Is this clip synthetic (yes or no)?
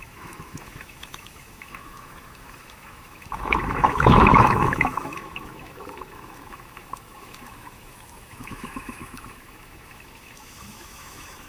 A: yes